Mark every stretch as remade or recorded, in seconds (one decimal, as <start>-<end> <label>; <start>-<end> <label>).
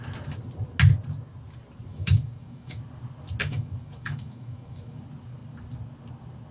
0.0-1.9 recorded; 1.9-2.8 remade; 2.8-3.4 recorded; 3.4-5.0 remade; 5.0-6.5 recorded